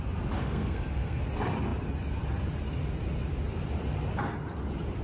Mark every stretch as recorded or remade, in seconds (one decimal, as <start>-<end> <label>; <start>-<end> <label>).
0.0-0.4 recorded; 0.4-1.2 remade; 1.2-5.0 recorded